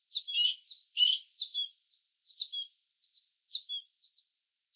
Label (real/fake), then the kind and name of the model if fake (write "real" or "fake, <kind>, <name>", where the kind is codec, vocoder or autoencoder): real